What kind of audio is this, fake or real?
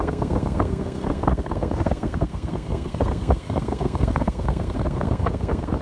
fake